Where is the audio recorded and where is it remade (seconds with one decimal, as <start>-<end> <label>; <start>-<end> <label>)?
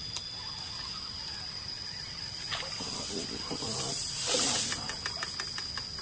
0.0-6.0 recorded